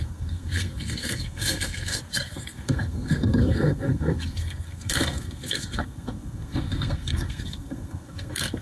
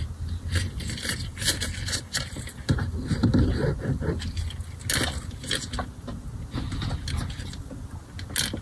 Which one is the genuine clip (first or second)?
second